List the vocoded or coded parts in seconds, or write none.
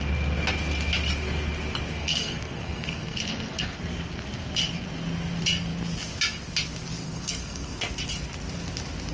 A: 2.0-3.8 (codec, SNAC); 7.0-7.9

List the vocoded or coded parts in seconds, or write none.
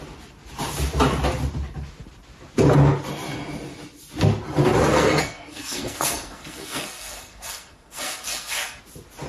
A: 4.9-8.8 (codec, SNAC)